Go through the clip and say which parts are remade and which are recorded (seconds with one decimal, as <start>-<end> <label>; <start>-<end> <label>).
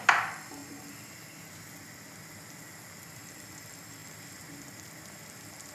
0.0-0.6 recorded; 0.6-1.4 remade; 1.4-4.0 recorded; 4.0-5.0 remade; 5.0-5.7 recorded